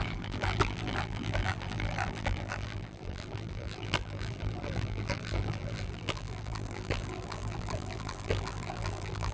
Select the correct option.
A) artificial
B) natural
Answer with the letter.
A